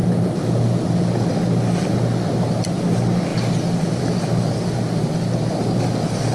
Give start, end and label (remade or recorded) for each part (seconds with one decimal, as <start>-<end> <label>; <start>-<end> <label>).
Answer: 0.0-6.3 recorded